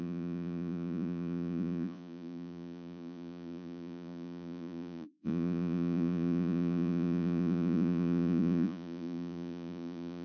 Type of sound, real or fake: fake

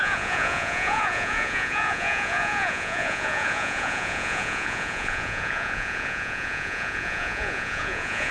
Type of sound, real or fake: fake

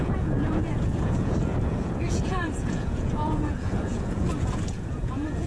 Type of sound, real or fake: fake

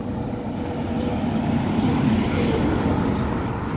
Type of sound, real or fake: real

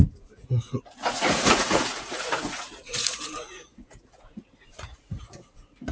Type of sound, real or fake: fake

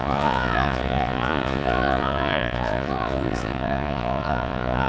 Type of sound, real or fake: fake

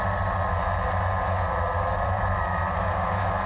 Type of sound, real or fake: real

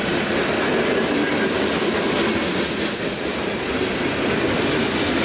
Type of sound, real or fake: real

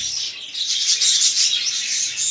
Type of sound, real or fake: real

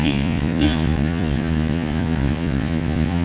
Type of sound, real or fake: fake